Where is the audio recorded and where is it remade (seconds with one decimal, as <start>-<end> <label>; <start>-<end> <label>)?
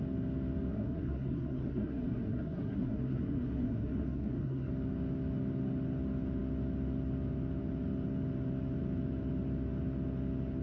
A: 0.0-0.7 recorded; 0.7-4.7 remade; 4.7-10.6 recorded